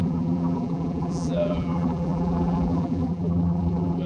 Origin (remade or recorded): remade